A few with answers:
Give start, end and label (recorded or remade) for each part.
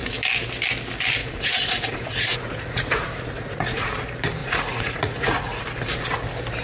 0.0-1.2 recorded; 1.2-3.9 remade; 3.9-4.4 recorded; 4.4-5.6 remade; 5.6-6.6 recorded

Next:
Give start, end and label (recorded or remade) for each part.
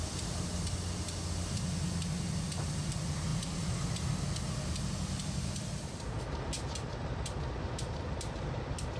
0.0-9.0 recorded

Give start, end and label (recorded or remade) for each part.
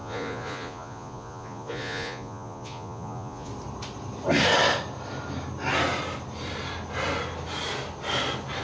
0.0-3.5 remade; 3.5-8.6 recorded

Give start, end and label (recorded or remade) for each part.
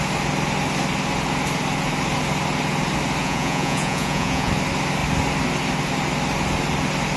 0.0-3.2 recorded; 3.2-4.5 remade; 4.5-7.2 recorded